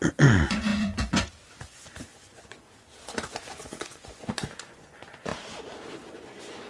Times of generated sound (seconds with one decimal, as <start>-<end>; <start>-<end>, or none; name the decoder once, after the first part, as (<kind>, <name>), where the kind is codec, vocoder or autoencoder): 0.0-5.3 (vocoder, Vocos); 6.1-6.7